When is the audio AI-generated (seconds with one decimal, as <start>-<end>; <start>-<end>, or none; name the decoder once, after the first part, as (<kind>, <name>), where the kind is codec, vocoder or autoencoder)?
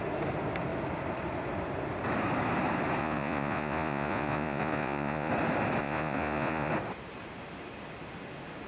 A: 3.0-5.3 (vocoder, Vocos); 5.8-6.7